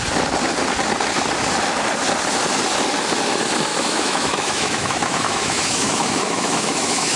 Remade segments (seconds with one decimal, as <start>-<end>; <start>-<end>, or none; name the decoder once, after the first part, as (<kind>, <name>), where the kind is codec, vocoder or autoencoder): 3.7-7.2 (autoencoder, DAC-VAE)